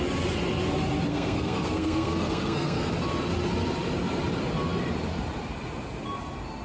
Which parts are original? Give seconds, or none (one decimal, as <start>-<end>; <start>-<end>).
0.0-1.1; 2.9-6.6